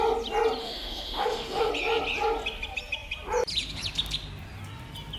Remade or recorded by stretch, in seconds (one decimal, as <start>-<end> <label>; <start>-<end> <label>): 0.0-0.6 recorded; 0.6-1.7 remade; 1.7-5.2 recorded